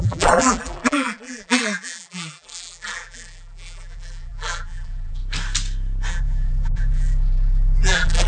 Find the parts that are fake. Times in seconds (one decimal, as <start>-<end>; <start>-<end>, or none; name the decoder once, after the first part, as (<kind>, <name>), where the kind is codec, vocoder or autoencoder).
0.0-5.2 (vocoder, BigVGAN v2); 6.1-8.3